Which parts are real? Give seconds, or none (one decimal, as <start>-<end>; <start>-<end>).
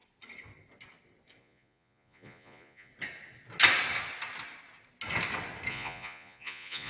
0.0-1.4; 2.9-5.7